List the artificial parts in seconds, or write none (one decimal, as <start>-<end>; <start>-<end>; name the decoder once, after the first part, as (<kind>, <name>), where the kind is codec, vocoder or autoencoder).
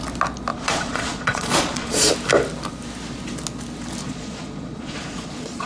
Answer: 0.5-2.1 (vocoder, Vocos); 4.0-5.7